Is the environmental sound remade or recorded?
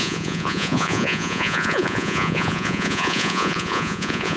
remade